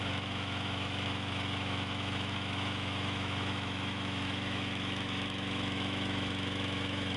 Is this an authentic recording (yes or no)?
no